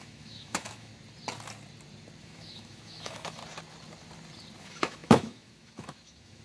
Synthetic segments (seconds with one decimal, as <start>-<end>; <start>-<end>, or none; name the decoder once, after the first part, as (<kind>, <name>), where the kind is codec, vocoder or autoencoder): 0.0-0.9 (autoencoder, DAC-VAE); 2.2-3.4; 4.6-6.4